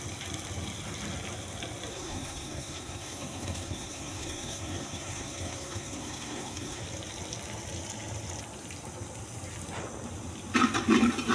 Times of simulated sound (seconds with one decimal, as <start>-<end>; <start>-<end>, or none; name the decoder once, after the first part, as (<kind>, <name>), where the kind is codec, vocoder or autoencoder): 1.9-6.8 (codec, SNAC)